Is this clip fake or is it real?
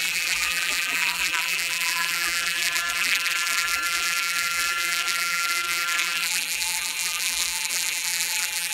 fake